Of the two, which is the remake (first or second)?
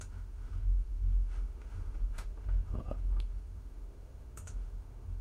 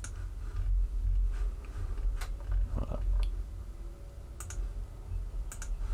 first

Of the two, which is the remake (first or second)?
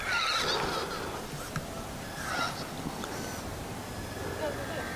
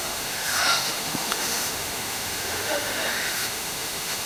second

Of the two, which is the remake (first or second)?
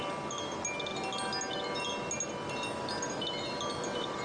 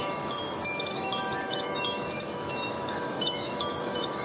second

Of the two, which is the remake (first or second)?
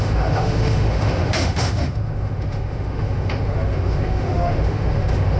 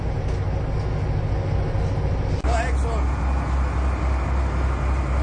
first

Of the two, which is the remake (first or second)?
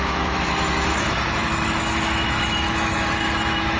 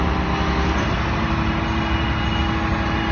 first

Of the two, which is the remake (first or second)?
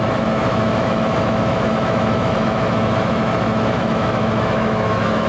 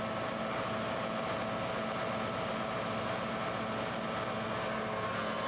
first